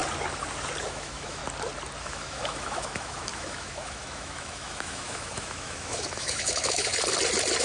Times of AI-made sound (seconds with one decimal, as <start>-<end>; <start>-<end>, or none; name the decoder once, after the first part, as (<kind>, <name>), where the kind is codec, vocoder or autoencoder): 0.8-1.4 (autoencoder, DAC-VAE); 2.0-6.9